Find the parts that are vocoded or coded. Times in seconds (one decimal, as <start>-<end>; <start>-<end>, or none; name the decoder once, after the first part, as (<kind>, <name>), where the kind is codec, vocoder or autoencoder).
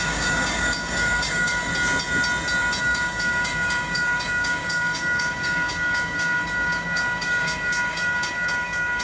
0.0-1.7 (codec, DAC); 2.8-9.0